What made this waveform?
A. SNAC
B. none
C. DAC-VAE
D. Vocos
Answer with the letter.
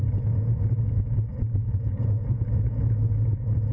D